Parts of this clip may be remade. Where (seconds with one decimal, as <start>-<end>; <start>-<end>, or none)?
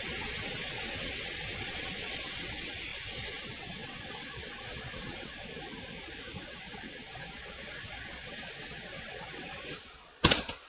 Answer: 0.0-5.5; 6.4-10.7